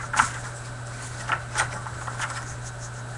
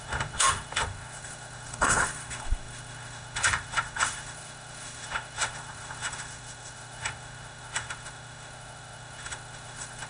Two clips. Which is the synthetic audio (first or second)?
second